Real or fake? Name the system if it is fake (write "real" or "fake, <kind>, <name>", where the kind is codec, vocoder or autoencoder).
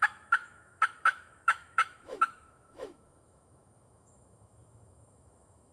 fake, autoencoder, DAC-VAE